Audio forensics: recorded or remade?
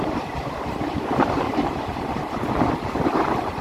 remade